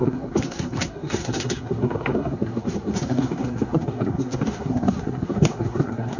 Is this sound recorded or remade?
remade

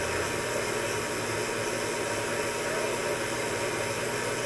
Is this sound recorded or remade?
recorded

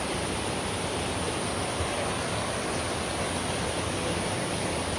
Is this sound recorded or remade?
recorded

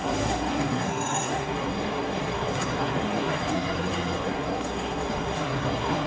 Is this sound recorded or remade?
remade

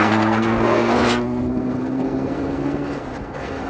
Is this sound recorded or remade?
remade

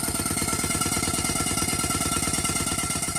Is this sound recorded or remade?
recorded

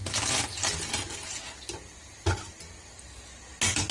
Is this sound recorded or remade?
recorded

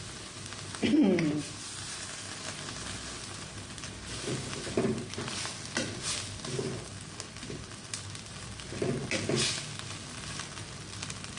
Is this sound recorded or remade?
recorded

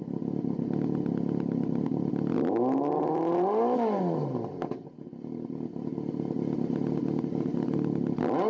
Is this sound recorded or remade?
recorded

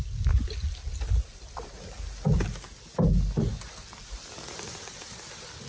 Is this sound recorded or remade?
recorded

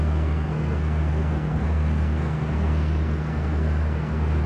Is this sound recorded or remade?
remade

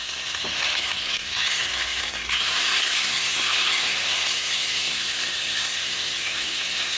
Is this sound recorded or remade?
remade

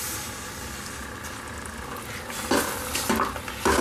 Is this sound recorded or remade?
recorded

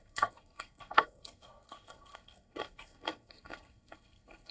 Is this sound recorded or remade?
remade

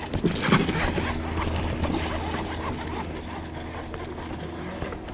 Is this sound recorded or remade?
recorded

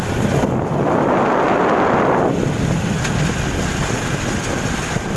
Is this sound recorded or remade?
recorded